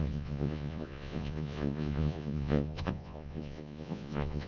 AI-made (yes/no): yes